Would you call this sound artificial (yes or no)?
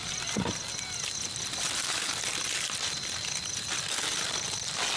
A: no